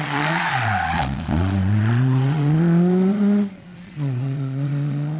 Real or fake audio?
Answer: fake